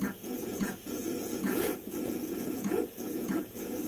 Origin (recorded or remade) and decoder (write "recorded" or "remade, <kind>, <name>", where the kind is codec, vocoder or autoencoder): remade, vocoder, Vocos